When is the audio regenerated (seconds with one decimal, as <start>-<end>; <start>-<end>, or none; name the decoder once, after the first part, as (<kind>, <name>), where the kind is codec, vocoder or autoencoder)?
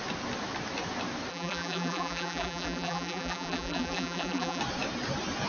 1.3-4.6 (vocoder, BigVGAN v2)